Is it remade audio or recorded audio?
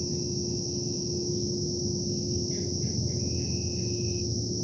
recorded